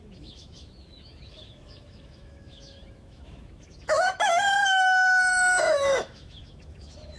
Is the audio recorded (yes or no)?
no